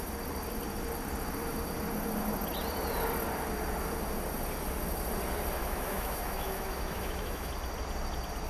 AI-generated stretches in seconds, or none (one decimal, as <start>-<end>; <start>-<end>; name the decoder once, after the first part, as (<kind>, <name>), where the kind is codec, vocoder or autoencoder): 5.6-7.5 (autoencoder, DAC-VAE)